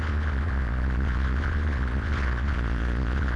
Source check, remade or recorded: remade